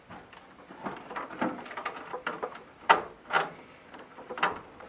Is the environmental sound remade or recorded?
recorded